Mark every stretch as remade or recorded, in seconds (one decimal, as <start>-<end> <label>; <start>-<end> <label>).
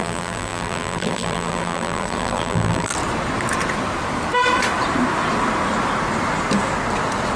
0.0-2.9 remade; 2.9-7.4 recorded